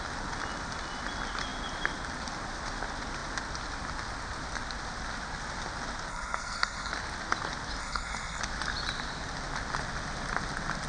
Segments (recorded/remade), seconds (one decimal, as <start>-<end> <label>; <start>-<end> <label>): 0.0-6.1 recorded; 6.1-6.9 remade; 6.9-7.8 recorded; 7.8-8.4 remade; 8.4-10.9 recorded